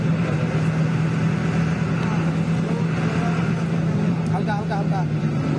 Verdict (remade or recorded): recorded